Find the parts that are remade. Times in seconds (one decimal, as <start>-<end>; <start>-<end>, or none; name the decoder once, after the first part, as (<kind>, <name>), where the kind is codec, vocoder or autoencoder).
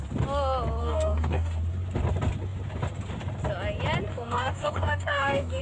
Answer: 0.8-1.6 (codec, DAC); 4.1-5.6